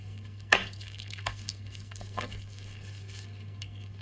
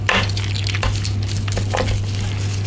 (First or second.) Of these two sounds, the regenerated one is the first